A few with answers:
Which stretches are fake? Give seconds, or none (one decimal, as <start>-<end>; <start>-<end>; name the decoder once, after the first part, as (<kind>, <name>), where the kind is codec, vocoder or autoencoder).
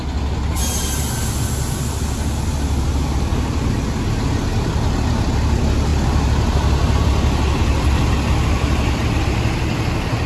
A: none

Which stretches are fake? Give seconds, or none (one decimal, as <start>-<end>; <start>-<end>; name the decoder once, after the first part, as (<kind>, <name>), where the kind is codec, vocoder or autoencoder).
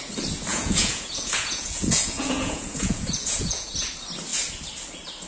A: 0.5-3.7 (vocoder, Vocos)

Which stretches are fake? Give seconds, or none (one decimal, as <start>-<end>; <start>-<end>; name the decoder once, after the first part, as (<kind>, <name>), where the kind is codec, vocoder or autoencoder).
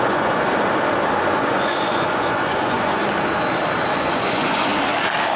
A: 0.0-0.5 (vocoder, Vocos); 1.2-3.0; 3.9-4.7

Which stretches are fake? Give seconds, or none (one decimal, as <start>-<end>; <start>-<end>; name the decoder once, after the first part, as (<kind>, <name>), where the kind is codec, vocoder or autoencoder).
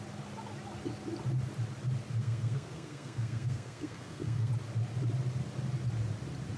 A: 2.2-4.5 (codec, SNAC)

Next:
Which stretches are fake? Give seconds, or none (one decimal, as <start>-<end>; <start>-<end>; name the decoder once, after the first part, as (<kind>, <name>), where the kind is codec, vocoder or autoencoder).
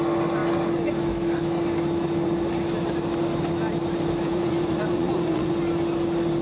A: 4.3-5.5 (vocoder, Vocos)